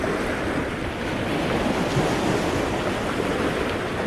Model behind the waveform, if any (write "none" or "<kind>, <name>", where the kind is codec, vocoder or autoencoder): none